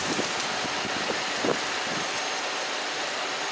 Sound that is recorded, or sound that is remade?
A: recorded